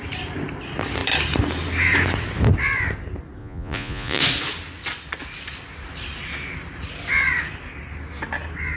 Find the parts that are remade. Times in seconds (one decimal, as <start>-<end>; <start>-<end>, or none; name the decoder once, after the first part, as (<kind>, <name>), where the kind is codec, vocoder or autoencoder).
3.4-4.2 (vocoder, Vocos)

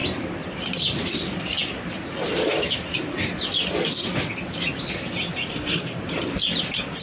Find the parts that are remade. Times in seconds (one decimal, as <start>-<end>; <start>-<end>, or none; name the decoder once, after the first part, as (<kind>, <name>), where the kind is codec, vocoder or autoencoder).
5.5-6.0 (codec, SNAC)